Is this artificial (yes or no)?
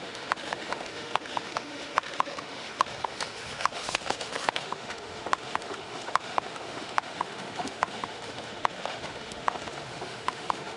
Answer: yes